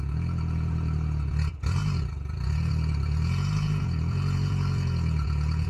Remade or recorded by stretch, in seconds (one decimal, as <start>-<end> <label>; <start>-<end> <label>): 0.0-5.7 remade